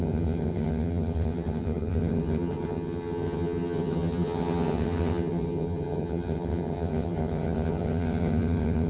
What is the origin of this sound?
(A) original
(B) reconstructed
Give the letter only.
B